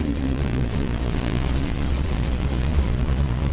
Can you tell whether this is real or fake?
fake